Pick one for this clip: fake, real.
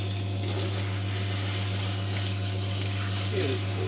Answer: real